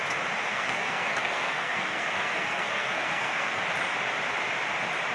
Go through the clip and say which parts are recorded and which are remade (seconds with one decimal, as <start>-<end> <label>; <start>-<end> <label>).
0.0-0.5 recorded; 0.5-3.6 remade; 3.6-5.1 recorded